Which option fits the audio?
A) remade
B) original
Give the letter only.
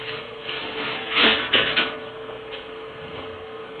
A